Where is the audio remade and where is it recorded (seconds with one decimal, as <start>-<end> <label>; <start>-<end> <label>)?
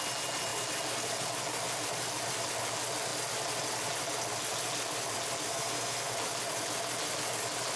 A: 0.0-5.5 recorded; 5.5-6.1 remade; 6.1-7.8 recorded